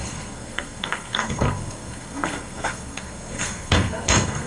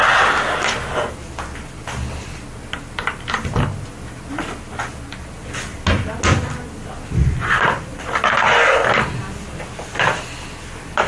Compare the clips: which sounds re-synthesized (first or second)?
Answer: first